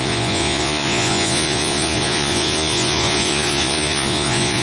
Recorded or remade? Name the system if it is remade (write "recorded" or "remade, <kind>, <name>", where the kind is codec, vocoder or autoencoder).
remade, vocoder, Vocos